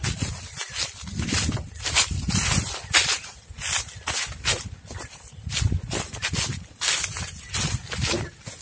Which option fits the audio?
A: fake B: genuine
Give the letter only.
B